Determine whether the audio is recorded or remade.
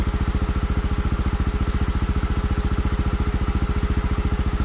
recorded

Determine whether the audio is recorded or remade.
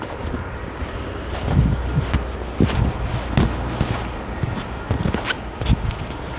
recorded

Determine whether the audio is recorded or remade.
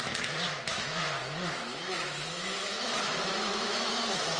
remade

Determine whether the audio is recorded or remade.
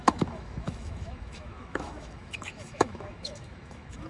remade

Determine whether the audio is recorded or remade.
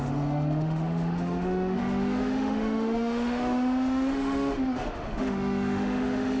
remade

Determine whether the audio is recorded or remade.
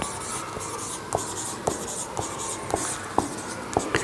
recorded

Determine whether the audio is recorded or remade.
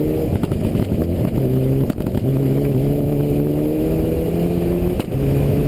remade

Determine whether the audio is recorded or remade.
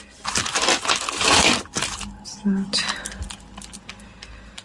recorded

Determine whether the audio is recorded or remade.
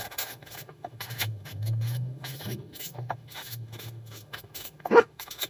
remade